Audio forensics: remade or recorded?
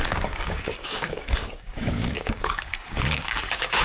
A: remade